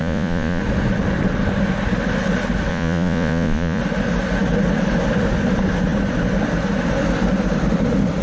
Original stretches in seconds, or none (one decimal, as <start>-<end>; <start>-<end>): 0.6-2.7; 3.8-8.2